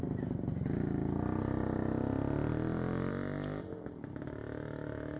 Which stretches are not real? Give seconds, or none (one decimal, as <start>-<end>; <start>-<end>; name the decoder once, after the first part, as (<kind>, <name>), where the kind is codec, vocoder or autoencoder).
none